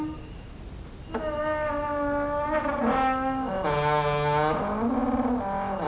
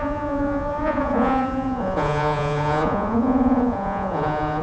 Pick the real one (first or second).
first